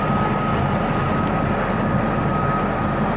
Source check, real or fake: real